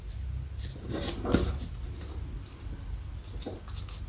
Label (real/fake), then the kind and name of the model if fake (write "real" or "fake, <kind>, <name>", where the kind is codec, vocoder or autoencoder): real